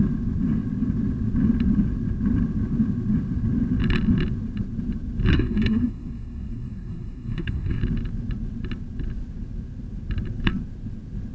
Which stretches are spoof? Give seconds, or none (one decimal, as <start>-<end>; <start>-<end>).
5.3-7.8